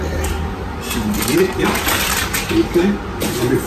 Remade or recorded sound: recorded